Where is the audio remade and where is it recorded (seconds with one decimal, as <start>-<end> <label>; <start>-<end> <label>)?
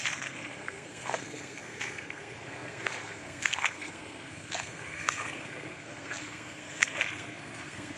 0.0-8.0 remade